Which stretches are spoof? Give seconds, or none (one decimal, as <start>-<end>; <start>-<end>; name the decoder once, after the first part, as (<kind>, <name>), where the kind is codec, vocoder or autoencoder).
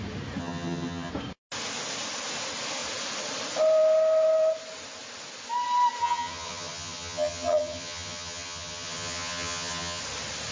0.4-1.1 (vocoder, HiFi-GAN); 6.0-10.0